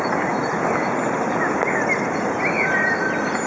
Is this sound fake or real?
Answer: real